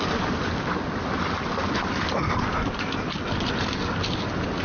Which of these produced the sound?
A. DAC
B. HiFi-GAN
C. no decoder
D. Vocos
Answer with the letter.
C